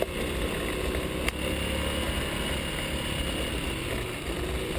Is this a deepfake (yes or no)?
no